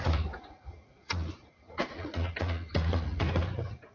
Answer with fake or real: fake